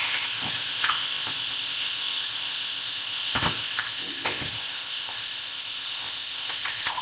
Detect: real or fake fake